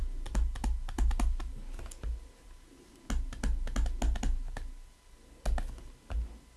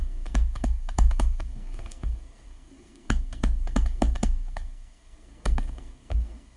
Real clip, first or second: first